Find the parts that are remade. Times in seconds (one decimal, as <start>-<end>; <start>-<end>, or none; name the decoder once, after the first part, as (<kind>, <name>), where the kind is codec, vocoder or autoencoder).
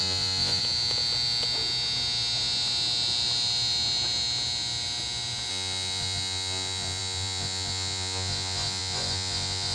0.0-0.6 (vocoder, Vocos); 5.5-9.7